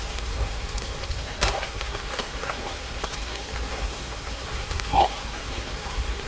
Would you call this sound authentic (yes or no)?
no